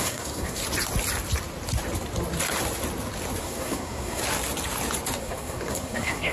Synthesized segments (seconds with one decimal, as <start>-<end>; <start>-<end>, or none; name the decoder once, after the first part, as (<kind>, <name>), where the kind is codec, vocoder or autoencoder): 0.0-0.6 (codec, SNAC); 3.4-4.2; 5.2-6.3